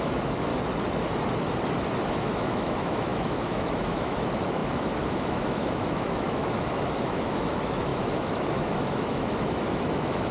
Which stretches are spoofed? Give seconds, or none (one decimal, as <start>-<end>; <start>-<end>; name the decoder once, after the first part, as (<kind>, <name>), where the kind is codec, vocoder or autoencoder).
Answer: 0.0-0.5 (autoencoder, DAC-VAE); 2.1-10.3